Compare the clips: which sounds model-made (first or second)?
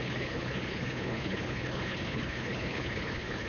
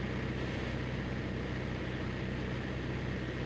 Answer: first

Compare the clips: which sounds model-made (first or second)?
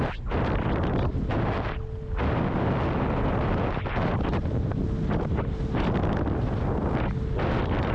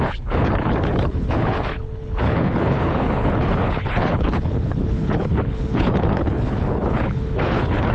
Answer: second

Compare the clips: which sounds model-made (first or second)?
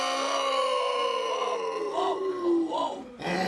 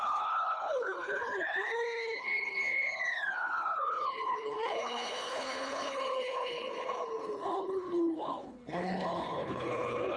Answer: second